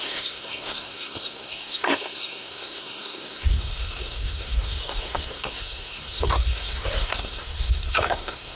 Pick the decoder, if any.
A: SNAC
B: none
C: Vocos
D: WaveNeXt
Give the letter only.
A